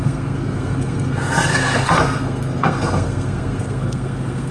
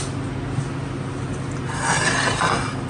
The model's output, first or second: first